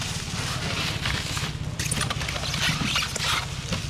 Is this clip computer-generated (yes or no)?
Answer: no